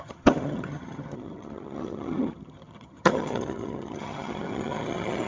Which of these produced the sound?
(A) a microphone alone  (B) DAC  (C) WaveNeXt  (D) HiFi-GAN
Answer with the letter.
D